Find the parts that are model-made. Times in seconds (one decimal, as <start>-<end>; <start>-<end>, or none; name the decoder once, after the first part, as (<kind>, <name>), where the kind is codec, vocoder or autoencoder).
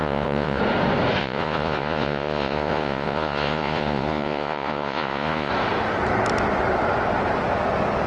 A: 0.0-0.6 (vocoder, Vocos); 1.2-5.5